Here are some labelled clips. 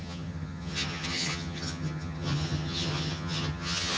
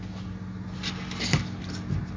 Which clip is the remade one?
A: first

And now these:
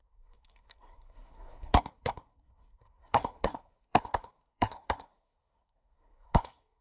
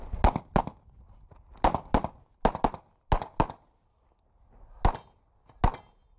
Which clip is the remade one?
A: first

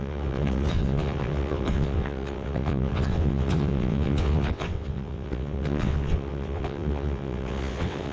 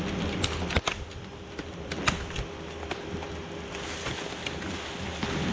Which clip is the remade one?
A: first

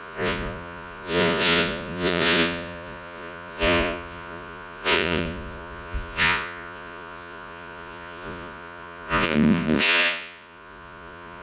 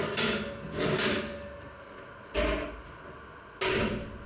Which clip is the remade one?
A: first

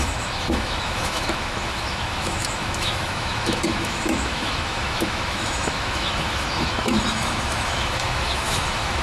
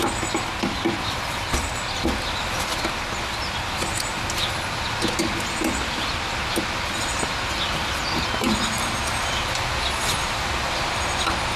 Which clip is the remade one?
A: first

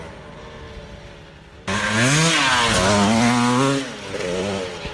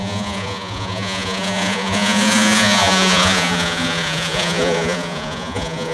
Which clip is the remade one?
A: second